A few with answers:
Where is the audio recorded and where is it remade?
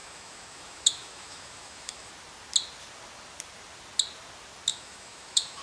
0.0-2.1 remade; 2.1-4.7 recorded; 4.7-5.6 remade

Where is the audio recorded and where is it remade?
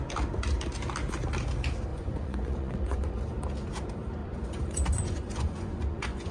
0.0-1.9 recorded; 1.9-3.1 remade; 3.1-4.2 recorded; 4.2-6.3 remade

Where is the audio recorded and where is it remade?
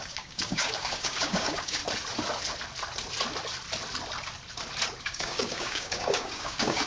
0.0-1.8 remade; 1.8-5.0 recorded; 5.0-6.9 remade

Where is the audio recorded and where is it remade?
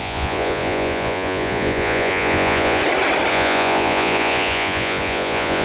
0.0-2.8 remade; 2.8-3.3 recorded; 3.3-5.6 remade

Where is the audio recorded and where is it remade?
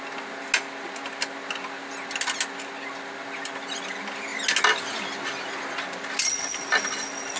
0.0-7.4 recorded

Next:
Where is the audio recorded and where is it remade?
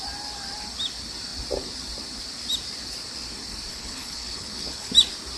0.0-3.7 recorded; 3.7-4.9 remade; 4.9-5.4 recorded